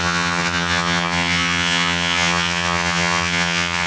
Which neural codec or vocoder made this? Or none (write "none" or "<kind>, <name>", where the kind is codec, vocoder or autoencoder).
vocoder, HiFi-GAN